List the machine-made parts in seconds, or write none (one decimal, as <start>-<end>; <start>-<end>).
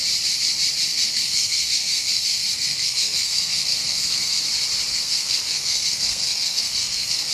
0.9-4.4; 4.9-7.3